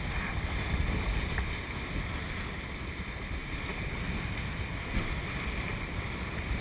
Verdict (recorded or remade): recorded